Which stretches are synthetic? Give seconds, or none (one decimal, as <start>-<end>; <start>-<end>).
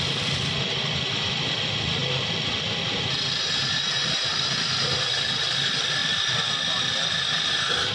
6.0-6.8